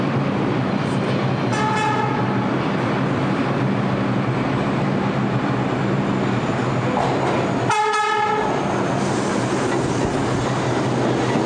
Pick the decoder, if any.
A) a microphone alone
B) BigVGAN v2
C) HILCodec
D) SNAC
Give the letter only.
A